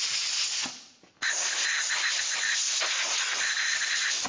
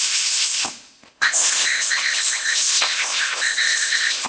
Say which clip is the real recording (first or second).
first